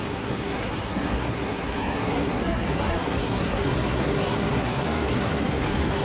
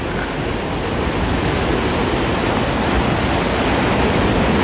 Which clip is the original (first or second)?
second